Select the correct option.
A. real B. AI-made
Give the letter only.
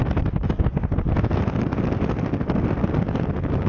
A